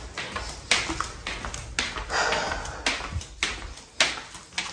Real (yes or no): yes